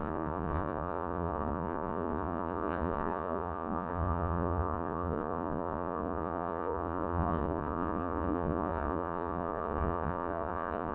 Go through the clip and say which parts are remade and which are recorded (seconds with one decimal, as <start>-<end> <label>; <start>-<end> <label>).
0.0-10.9 remade